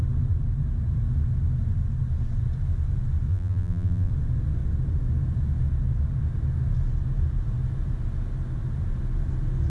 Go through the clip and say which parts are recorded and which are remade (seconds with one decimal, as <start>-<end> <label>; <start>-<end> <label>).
0.0-3.3 recorded; 3.3-4.1 remade; 4.1-9.7 recorded